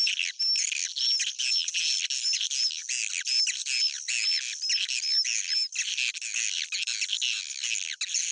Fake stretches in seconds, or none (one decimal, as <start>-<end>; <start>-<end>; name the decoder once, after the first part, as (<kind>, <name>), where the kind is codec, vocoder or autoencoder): none